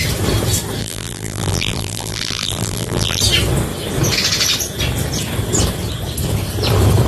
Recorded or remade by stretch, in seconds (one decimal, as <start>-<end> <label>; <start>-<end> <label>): 0.0-0.8 recorded; 0.8-3.2 remade; 3.2-7.1 recorded